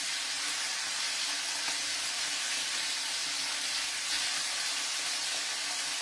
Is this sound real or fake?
real